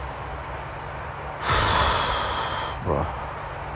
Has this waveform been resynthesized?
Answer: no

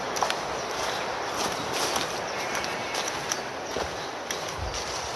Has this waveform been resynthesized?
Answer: no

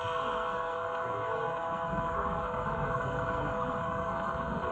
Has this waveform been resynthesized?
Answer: yes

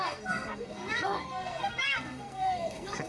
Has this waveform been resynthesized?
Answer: yes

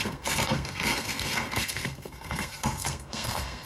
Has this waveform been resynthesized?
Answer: yes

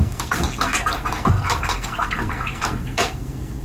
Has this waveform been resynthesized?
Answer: yes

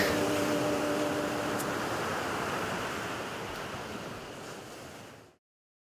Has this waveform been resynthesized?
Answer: no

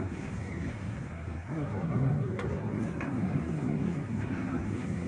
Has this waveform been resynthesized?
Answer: yes